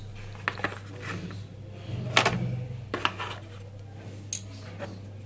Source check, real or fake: real